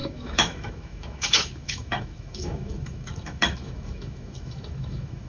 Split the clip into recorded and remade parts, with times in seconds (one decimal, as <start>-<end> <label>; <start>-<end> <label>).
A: 0.0-5.3 remade